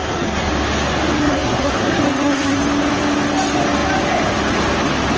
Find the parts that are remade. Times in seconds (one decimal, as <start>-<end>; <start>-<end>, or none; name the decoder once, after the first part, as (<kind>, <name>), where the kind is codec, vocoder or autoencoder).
0.0-0.5 (codec, SNAC); 1.2-2.6